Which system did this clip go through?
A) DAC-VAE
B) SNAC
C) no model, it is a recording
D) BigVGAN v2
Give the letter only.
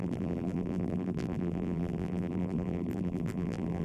D